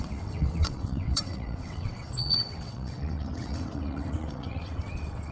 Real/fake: fake